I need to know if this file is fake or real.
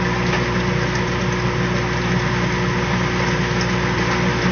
real